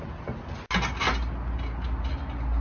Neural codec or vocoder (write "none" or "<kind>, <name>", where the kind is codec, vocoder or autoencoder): none